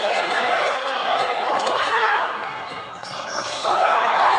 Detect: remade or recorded remade